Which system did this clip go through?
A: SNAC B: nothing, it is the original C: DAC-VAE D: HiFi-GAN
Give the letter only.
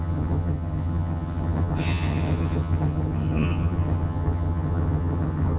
D